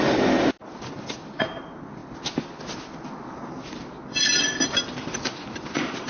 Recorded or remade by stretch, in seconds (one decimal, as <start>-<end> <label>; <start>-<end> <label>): 0.0-6.1 recorded